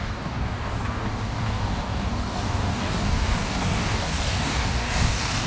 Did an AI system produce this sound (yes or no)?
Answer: yes